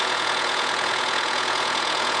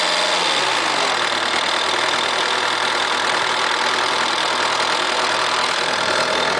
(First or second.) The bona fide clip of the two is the second